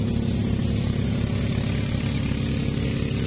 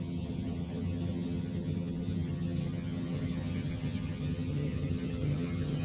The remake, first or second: second